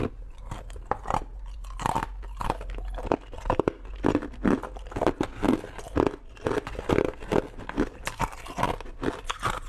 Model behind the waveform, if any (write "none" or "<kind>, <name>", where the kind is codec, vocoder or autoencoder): none